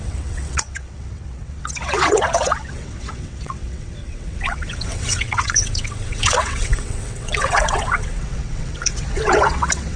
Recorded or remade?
remade